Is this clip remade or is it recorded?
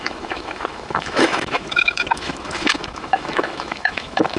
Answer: remade